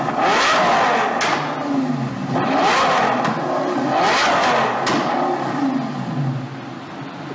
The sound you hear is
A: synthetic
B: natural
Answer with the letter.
B